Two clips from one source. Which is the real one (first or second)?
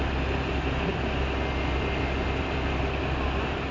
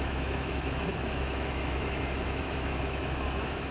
first